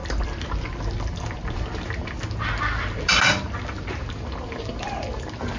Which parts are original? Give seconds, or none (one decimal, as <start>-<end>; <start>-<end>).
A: 0.0-5.6